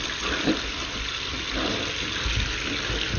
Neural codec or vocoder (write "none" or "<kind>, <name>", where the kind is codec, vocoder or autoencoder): none